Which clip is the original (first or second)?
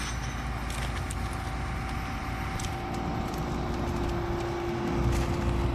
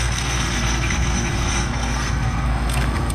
first